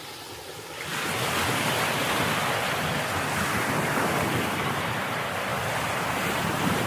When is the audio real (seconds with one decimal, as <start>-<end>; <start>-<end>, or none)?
0.0-6.9